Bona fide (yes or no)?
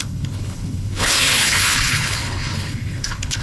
no